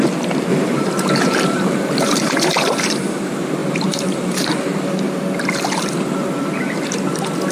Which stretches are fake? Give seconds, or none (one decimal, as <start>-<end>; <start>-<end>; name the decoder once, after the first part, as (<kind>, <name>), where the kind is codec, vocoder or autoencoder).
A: 0.5-2.3 (vocoder, BigVGAN v2); 3.6-5.2

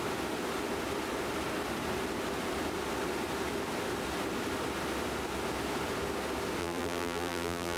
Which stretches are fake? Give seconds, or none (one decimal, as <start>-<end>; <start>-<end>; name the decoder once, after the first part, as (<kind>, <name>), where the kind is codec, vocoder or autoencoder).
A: 6.6-7.8 (vocoder, BigVGAN v2)

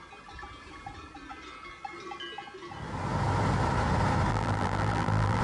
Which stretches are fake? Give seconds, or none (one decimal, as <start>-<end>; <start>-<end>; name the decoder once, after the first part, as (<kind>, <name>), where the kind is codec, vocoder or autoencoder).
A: 4.3-5.4 (vocoder, BigVGAN v2)

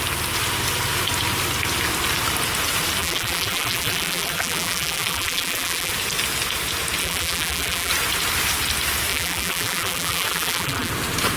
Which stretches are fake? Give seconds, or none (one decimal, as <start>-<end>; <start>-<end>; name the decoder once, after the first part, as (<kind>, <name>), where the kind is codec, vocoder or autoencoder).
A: 3.0-5.9 (vocoder, BigVGAN v2); 7.0-7.9; 9.1-10.9